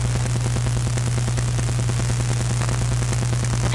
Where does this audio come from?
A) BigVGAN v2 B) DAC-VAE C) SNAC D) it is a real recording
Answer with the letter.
D